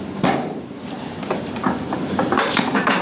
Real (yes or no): no